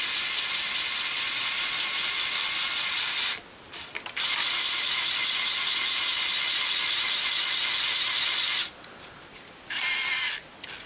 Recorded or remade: recorded